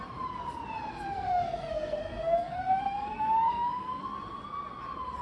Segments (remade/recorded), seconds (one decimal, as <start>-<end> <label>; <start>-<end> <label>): 0.0-0.9 recorded; 0.9-4.0 remade; 4.0-5.2 recorded